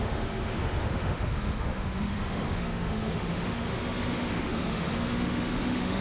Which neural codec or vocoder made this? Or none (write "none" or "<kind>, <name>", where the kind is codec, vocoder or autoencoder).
autoencoder, DAC-VAE